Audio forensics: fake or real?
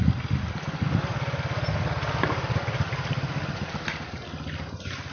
real